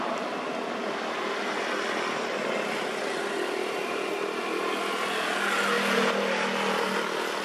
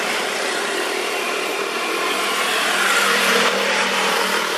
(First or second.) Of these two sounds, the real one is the first